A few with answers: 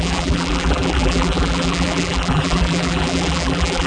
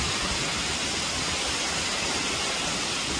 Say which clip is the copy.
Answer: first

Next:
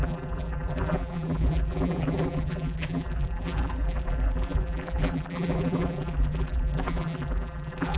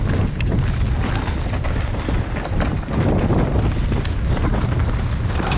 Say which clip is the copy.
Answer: first